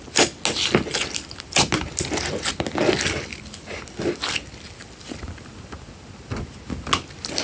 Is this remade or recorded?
recorded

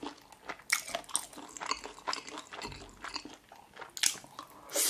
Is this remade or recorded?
recorded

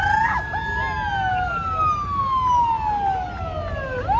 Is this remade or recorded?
recorded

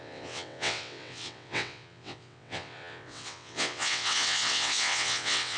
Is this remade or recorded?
remade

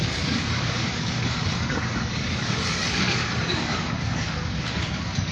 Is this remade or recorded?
remade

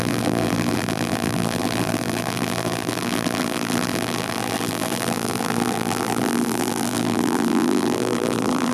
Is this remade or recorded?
remade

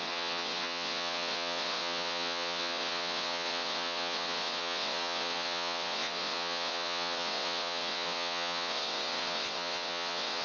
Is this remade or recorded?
remade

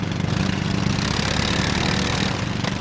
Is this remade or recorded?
recorded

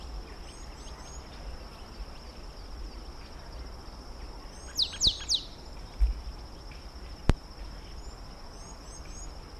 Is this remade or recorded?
recorded